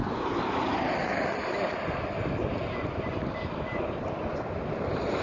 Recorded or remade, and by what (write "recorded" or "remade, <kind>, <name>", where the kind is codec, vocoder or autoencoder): recorded